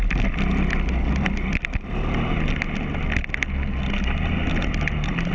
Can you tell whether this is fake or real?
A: real